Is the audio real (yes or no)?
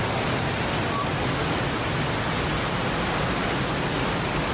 yes